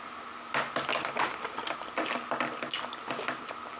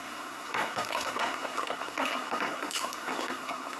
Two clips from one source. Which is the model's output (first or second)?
second